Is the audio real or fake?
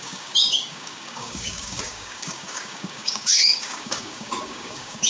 fake